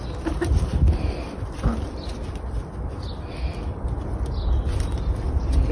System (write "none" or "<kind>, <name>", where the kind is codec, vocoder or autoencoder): none